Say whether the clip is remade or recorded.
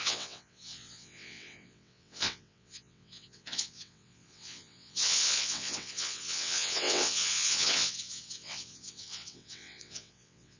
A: remade